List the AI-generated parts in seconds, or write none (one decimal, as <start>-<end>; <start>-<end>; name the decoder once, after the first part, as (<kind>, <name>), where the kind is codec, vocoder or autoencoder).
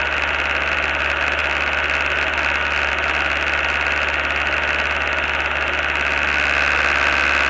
none